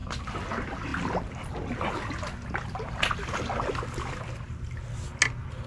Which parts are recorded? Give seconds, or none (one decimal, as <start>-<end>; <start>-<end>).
0.0-5.7